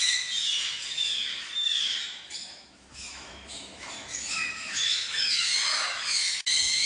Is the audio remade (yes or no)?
yes